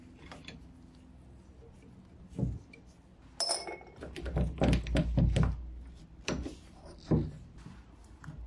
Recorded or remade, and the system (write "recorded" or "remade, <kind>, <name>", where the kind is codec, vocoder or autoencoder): recorded